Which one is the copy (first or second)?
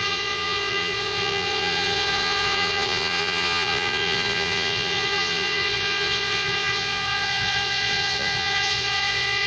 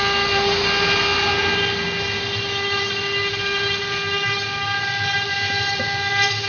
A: first